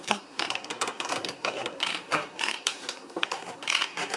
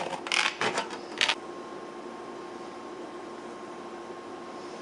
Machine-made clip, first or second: first